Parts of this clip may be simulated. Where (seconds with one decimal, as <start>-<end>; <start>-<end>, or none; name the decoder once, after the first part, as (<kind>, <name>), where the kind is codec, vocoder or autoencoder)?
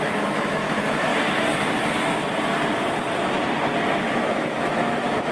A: 0.0-1.1 (autoencoder, DAC-VAE); 4.3-5.3